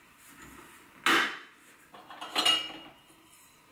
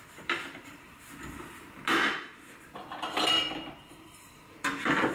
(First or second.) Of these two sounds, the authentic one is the first